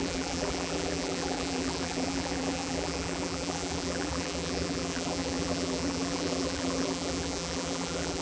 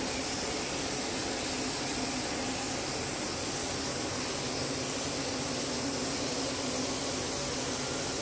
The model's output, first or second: first